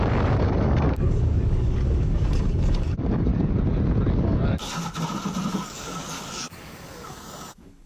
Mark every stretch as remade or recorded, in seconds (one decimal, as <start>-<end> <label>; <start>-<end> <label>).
0.0-3.3 remade; 3.3-4.1 recorded; 4.1-4.6 remade; 4.6-5.5 recorded; 5.5-7.9 remade